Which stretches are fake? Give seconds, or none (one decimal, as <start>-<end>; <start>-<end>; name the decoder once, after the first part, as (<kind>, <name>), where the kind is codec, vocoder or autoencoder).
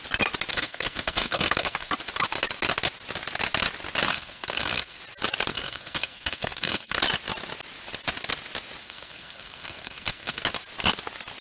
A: 0.5-1.9 (codec, SNAC); 4.1-5.0; 5.5-7.0; 8.8-10.4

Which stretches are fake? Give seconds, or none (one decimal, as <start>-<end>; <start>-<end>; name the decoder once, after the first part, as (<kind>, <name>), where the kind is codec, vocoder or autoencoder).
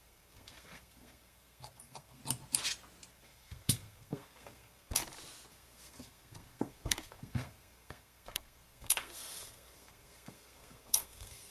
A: 0.0-2.2 (codec, SNAC); 3.1-5.0; 5.5-11.5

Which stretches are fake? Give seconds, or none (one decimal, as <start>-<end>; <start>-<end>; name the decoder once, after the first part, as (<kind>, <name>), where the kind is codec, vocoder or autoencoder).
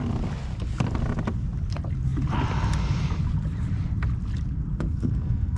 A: 4.7-5.6 (codec, SNAC)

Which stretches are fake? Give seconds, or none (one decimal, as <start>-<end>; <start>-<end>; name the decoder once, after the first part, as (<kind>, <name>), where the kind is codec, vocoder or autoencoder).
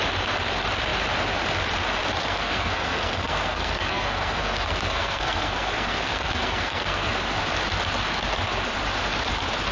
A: 2.2-7.1 (codec, SNAC)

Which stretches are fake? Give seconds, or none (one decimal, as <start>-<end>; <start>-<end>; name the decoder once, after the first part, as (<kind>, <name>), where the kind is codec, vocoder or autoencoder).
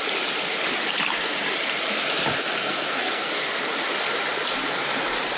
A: 2.6-3.3 (codec, SNAC)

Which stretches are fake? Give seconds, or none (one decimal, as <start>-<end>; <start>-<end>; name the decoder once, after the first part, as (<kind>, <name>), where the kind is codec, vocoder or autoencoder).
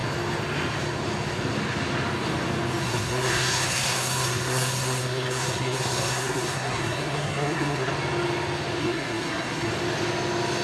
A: 2.8-7.9 (codec, SNAC); 8.8-9.7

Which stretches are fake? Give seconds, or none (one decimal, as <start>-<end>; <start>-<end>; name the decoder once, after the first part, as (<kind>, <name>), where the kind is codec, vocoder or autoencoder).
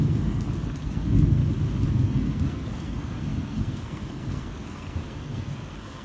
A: 0.0-1.4 (codec, SNAC); 1.9-6.0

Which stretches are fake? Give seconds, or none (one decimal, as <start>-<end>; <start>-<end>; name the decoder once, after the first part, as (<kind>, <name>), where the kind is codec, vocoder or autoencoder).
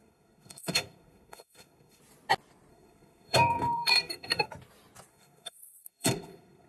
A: 0.0-2.0 (codec, SNAC); 2.7-4.5; 5.1-6.7